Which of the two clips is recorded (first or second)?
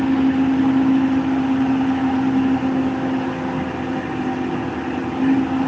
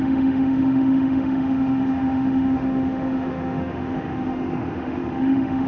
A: first